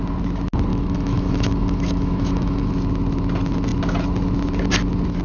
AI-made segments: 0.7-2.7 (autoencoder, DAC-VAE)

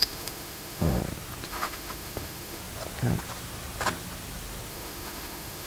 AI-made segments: 0.0-1.0 (autoencoder, DAC-VAE); 1.5-2.6; 4.7-5.7

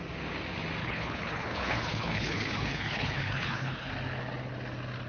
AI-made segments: 0.8-3.9 (codec, HILCodec)